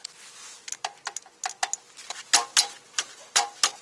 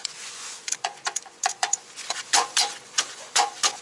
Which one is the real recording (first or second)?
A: first